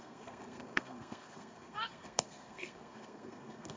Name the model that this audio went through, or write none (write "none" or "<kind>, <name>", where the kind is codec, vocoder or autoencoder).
codec, SNAC